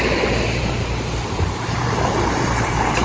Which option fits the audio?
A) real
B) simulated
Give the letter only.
B